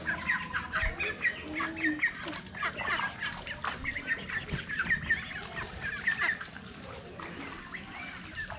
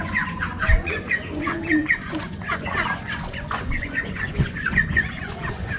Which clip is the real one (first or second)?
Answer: first